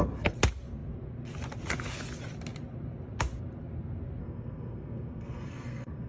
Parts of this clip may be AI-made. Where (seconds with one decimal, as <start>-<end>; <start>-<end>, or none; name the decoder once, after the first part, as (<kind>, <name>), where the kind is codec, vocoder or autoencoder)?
4.2-6.1 (codec, SNAC)